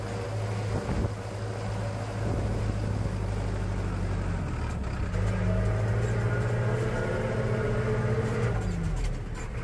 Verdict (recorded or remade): recorded